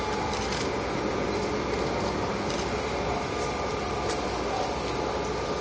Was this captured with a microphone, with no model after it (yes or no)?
yes